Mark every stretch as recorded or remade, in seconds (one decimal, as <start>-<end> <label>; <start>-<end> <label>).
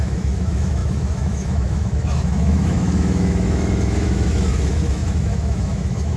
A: 0.0-6.2 remade